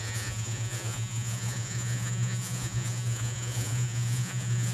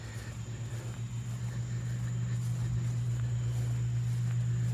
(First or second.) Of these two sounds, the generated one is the first